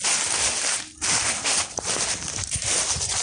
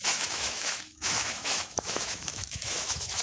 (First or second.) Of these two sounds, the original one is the first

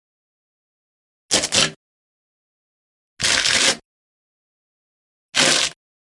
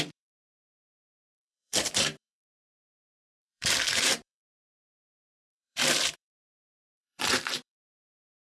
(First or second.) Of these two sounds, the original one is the first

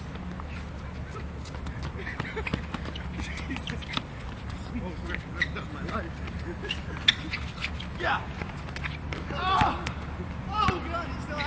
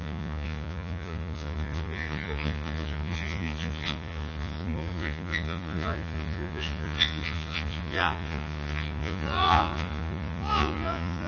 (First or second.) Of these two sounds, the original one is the first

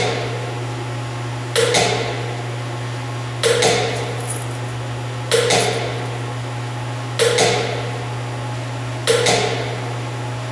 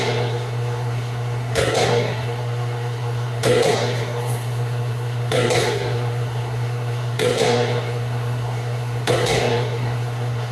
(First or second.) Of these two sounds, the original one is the first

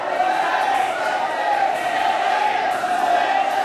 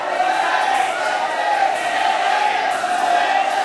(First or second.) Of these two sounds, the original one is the second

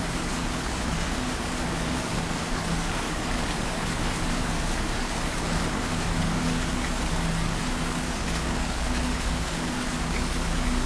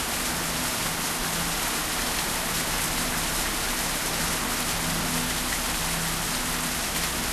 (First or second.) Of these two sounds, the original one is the second